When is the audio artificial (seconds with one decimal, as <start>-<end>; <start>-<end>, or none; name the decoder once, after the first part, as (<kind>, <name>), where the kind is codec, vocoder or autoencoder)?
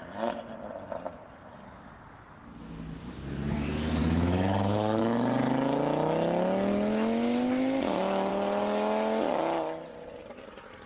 4.0-5.0 (autoencoder, DAC-VAE)